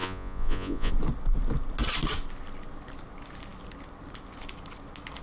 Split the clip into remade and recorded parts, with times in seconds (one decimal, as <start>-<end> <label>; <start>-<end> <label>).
0.0-0.9 remade; 0.9-5.2 recorded